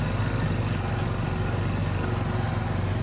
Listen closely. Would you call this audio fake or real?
real